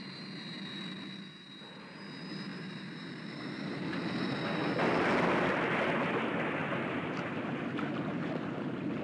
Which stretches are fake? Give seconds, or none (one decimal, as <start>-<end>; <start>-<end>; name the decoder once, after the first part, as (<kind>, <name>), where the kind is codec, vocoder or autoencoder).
none